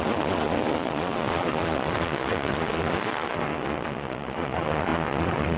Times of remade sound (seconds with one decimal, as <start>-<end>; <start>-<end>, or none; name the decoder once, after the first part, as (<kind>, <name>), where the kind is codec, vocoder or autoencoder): 0.0-5.6 (vocoder, Vocos)